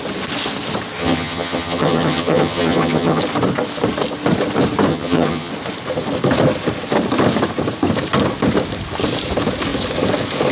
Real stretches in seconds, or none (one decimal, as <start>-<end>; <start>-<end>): 0.0-1.0; 3.2-4.9; 5.5-10.5